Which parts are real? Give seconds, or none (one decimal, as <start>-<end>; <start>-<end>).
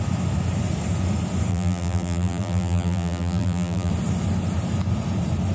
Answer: 0.0-1.5; 3.9-5.5